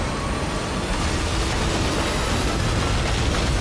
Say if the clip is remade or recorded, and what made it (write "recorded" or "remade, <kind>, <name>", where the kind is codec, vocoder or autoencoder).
recorded